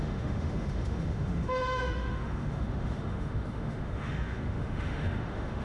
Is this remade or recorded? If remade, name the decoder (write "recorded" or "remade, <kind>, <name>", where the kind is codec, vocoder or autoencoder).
remade, autoencoder, DAC-VAE